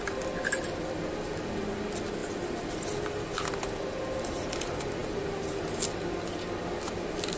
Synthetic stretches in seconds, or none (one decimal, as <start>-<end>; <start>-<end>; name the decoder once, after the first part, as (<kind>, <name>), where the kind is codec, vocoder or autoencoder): none